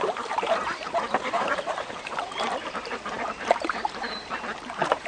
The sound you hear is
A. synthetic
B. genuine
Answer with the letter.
A